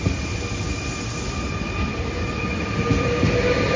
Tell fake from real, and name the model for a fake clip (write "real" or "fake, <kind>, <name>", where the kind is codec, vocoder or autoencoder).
real